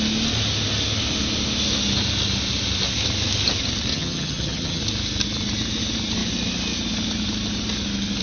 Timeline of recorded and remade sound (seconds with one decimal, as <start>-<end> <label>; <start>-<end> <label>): 0.0-3.9 recorded; 3.9-4.8 remade; 4.8-8.2 recorded

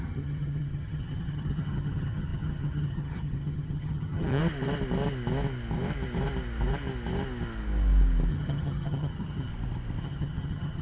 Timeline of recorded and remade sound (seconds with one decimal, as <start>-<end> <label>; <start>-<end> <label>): 0.0-4.4 remade; 4.4-8.3 recorded; 8.3-9.5 remade; 9.5-10.0 recorded; 10.0-10.8 remade

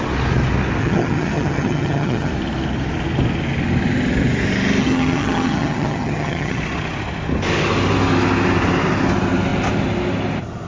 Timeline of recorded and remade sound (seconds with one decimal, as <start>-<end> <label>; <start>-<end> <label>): 0.0-0.8 recorded; 0.8-2.3 remade; 2.3-4.8 recorded; 4.8-6.6 remade; 6.6-10.7 recorded

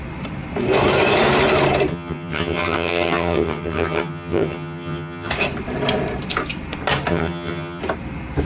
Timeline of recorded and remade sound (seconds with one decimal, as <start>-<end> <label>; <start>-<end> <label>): 0.0-1.9 recorded; 1.9-5.3 remade; 5.3-7.1 recorded; 7.1-7.8 remade; 7.8-8.4 recorded

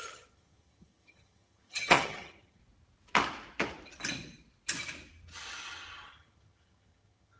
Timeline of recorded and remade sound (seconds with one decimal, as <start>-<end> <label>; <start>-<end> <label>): 0.0-2.6 remade; 2.6-6.1 recorded; 6.1-7.4 remade